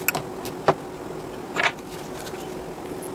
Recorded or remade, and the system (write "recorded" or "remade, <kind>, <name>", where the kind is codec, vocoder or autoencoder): recorded